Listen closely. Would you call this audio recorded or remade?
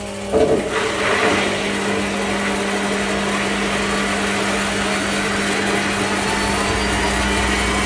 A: recorded